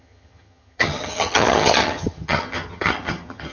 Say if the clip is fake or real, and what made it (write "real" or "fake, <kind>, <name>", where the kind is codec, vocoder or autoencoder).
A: fake, vocoder, HiFi-GAN